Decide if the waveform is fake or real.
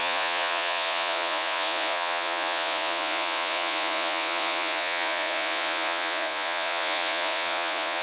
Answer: fake